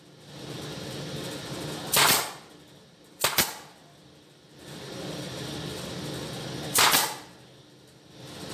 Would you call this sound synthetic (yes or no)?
no